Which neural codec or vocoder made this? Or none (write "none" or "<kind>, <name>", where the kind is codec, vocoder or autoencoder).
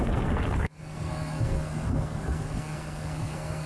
codec, SNAC